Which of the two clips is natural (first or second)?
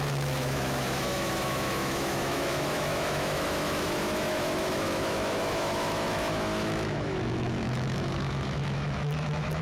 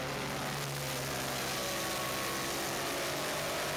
second